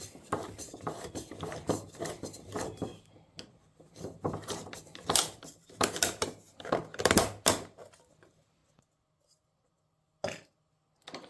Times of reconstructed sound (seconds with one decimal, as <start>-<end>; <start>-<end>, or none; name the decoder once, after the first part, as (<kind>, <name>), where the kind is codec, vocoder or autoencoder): 0.0-2.9 (vocoder, BigVGAN v2); 3.5-6.8; 7.5-8.6